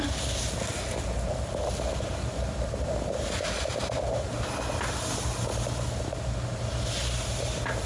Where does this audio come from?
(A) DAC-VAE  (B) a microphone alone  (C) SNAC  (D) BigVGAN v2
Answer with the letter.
B